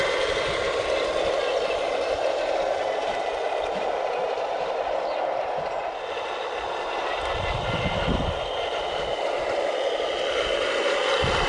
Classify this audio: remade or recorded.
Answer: remade